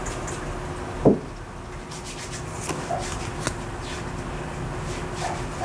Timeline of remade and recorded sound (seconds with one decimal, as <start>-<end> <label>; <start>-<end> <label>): 0.0-5.6 recorded